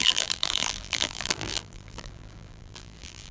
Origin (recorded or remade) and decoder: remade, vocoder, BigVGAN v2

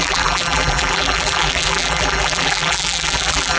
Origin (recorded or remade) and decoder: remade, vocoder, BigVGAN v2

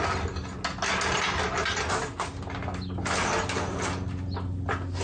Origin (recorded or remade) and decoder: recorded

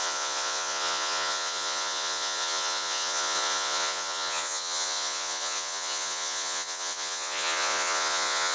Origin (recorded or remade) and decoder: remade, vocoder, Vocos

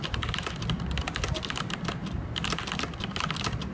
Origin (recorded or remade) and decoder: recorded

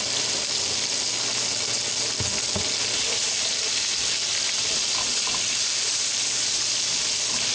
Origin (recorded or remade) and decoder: recorded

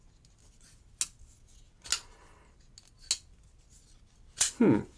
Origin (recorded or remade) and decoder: recorded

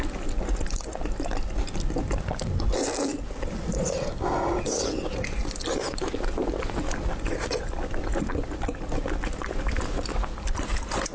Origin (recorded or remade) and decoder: recorded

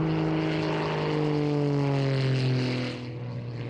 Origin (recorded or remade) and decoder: recorded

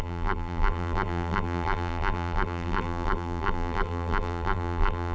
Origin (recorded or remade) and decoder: remade, vocoder, BigVGAN v2